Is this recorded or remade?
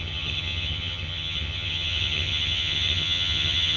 remade